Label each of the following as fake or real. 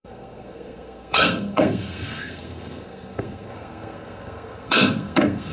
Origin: fake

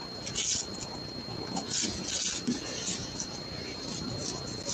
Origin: real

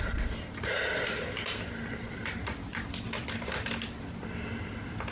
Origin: real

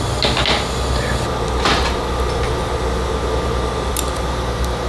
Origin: real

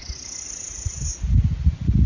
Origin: real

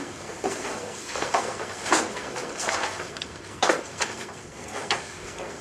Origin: fake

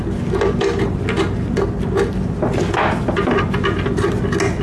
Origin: real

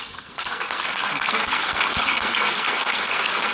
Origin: fake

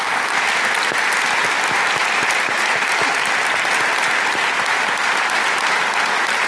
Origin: real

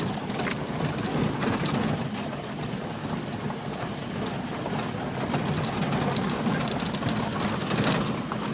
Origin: real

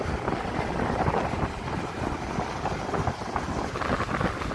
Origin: real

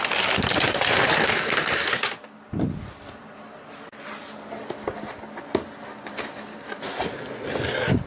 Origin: real